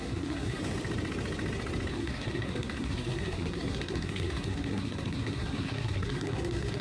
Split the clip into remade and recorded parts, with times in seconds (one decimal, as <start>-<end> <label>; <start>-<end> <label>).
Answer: 0.0-0.6 remade; 0.6-1.9 recorded; 1.9-6.8 remade